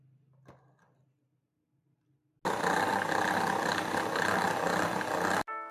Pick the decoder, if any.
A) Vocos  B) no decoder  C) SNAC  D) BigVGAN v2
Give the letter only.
B